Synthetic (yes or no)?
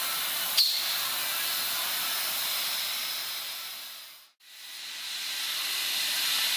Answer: no